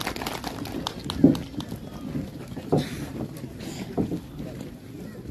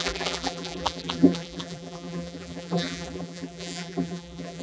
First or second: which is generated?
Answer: second